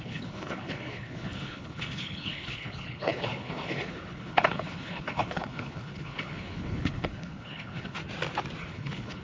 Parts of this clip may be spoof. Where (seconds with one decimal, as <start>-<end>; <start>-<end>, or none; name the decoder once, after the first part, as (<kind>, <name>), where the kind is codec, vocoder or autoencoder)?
0.0-8.0 (codec, HILCodec); 8.7-9.2